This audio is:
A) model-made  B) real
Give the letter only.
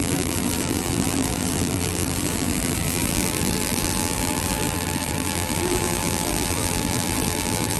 A